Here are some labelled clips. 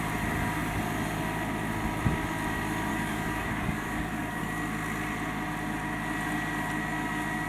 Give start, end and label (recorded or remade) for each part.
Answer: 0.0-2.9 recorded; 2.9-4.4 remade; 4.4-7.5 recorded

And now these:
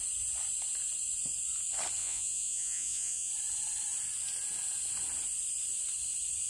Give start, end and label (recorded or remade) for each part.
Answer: 0.0-2.0 recorded; 2.0-3.3 remade; 3.3-6.5 recorded

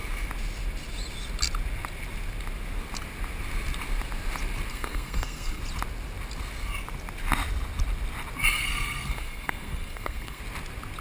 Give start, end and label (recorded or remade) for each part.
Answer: 0.0-4.7 recorded; 4.7-5.6 remade; 5.6-8.6 recorded; 8.6-10.4 remade; 10.4-11.0 recorded

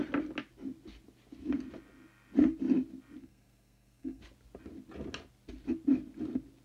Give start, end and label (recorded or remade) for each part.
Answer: 0.0-3.2 recorded; 3.2-4.2 remade; 4.2-6.6 recorded

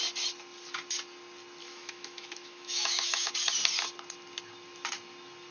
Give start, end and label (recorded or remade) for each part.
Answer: 0.0-1.6 recorded; 1.6-3.3 remade; 3.3-5.5 recorded